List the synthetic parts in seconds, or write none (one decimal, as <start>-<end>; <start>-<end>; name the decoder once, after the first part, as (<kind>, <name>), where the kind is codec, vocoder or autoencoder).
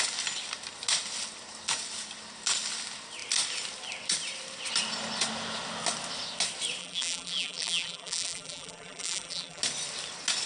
6.8-9.6 (vocoder, BigVGAN v2)